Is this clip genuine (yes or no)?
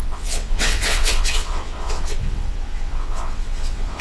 no